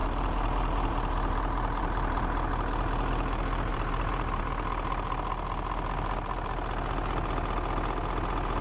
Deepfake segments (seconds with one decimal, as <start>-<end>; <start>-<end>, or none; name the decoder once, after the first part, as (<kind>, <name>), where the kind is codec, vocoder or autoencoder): 0.0-2.5 (vocoder, BigVGAN v2); 3.7-4.4